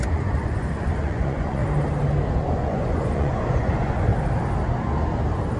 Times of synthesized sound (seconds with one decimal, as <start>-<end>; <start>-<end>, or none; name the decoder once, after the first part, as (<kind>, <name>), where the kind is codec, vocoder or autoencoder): 0.0-1.6 (vocoder, Vocos); 2.3-4.1